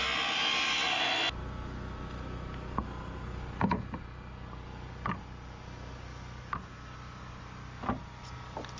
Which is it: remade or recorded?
recorded